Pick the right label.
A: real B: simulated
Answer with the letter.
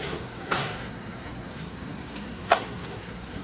B